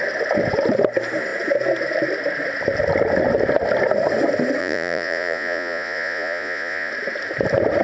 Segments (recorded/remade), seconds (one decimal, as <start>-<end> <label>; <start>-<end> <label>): 0.0-4.6 recorded; 4.6-6.9 remade; 6.9-7.8 recorded